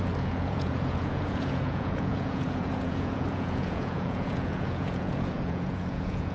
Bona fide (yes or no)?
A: no